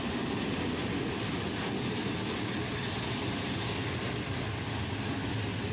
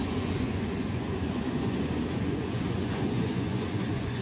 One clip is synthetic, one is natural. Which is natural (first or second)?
first